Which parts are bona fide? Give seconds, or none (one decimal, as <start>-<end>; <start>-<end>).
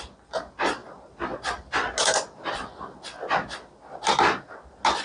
0.0-5.0